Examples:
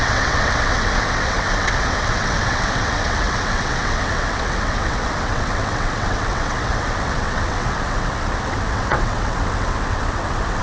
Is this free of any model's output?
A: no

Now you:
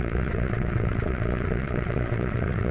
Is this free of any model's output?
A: no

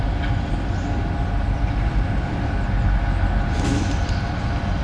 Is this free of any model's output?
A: yes